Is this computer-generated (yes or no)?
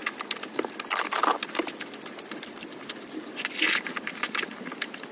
no